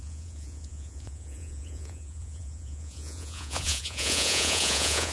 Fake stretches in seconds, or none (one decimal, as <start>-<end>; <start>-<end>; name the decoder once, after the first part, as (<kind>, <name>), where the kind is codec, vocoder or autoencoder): 0.0-5.1 (vocoder, Vocos)

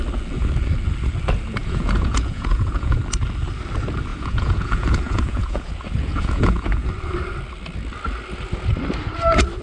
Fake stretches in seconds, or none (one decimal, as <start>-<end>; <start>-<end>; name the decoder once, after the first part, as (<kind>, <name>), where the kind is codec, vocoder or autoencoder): 1.6-3.0 (vocoder, Vocos); 4.1-6.9

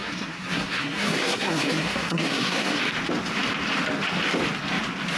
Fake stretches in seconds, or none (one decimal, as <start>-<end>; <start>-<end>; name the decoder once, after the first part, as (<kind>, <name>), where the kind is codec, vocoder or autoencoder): 0.0-2.8 (codec, SNAC)

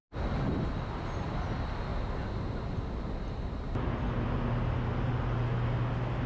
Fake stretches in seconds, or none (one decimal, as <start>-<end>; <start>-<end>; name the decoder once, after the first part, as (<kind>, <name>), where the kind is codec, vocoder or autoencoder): none

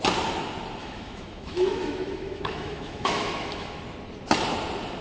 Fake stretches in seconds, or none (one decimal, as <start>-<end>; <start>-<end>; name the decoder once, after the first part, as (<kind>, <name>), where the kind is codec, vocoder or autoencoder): 0.8-3.8 (autoencoder, DAC-VAE)

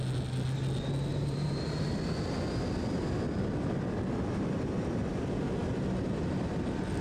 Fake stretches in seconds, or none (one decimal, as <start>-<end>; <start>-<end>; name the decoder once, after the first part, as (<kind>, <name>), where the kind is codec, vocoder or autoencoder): 1.1-1.9 (vocoder, BigVGAN v2)

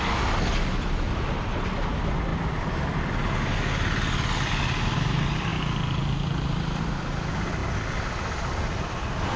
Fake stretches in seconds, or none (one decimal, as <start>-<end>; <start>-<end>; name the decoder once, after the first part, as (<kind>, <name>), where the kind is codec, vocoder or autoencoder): none

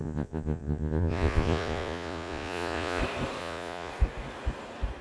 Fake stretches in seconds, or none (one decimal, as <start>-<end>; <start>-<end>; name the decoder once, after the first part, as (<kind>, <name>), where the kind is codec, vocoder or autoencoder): 0.0-3.0 (vocoder, Vocos); 3.4-3.9